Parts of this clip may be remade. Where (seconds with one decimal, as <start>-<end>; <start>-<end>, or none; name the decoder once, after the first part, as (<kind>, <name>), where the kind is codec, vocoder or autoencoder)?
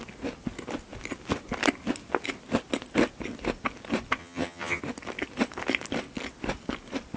4.2-4.8 (vocoder, HiFi-GAN)